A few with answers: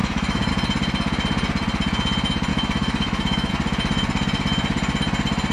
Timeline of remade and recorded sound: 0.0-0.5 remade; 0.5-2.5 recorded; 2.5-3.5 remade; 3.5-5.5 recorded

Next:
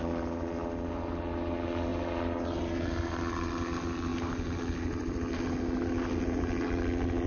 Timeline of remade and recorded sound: 0.0-7.3 recorded

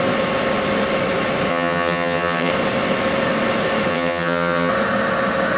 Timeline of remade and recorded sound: 0.0-1.5 recorded; 1.5-2.5 remade; 2.5-3.9 recorded; 3.9-4.7 remade; 4.7-5.6 recorded

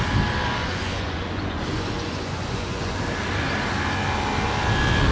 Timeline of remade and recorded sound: 0.0-0.6 recorded; 0.6-3.0 remade; 3.0-5.1 recorded

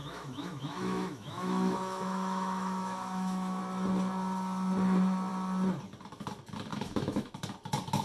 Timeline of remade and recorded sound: 0.0-3.6 remade; 3.6-6.7 recorded; 6.7-7.3 remade; 7.3-8.0 recorded

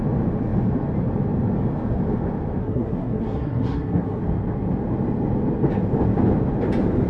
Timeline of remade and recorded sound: 0.0-2.6 recorded; 2.6-4.2 remade; 4.2-7.1 recorded

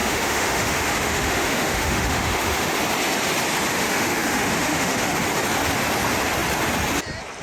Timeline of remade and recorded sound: 0.0-2.8 remade; 2.8-3.7 recorded; 3.7-5.1 remade; 5.1-7.4 recorded

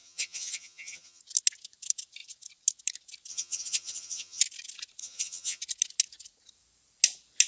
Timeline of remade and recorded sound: 0.0-1.2 remade; 1.2-3.3 recorded; 3.3-4.4 remade; 4.4-5.0 recorded; 5.0-5.6 remade; 5.6-7.5 recorded